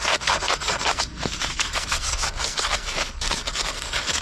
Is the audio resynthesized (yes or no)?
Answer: yes